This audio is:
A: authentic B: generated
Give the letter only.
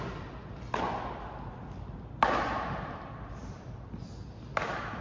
A